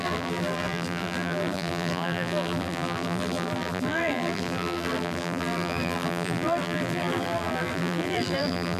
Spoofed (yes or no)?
yes